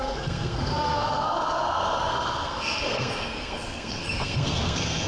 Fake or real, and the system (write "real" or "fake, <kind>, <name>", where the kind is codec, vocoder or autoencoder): fake, codec, SNAC